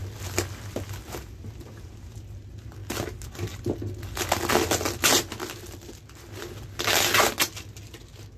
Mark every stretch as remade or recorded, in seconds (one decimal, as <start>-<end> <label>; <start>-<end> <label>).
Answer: 0.0-8.4 recorded